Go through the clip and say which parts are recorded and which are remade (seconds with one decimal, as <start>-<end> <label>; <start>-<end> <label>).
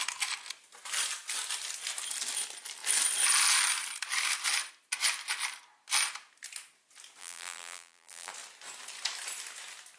0.0-7.2 recorded; 7.2-8.3 remade; 8.3-10.0 recorded